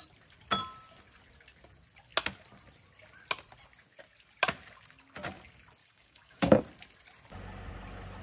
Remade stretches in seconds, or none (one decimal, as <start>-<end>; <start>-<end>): 5.8-6.6